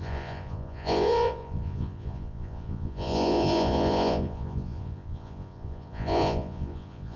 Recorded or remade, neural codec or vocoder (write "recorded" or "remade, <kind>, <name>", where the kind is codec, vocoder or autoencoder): remade, vocoder, Vocos